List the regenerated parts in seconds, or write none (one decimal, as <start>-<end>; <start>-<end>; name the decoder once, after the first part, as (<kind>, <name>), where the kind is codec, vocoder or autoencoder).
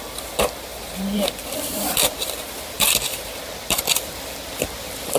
0.0-5.2 (vocoder, BigVGAN v2)